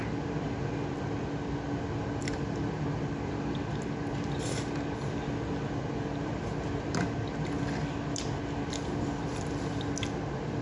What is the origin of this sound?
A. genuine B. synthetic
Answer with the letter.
A